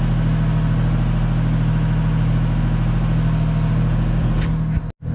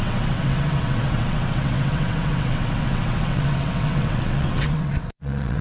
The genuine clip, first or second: first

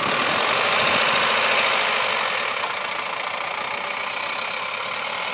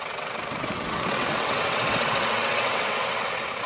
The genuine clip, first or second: first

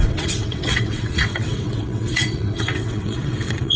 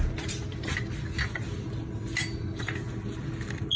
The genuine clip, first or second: second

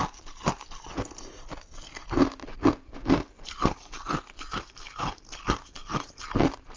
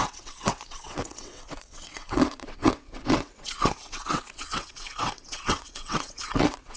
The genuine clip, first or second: first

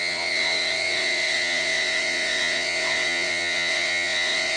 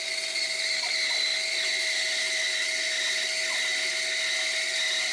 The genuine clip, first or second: second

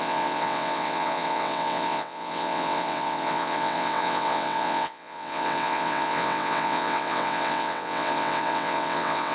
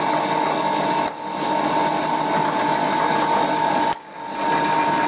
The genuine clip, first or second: second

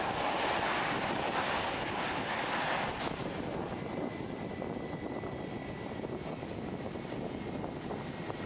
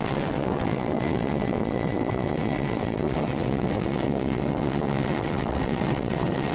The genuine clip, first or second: first